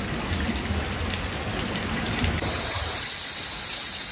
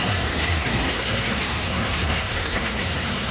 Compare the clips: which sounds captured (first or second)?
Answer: first